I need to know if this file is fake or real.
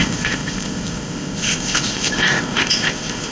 fake